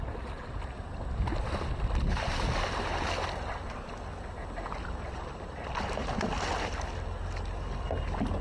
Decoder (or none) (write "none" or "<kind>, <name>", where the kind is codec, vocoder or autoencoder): none